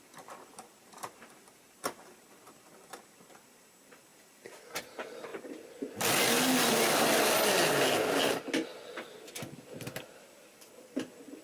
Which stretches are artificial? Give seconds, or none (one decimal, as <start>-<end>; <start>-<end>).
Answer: 0.5-2.2